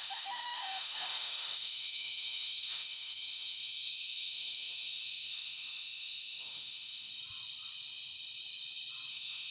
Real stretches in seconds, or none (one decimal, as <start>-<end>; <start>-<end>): 7.1-9.1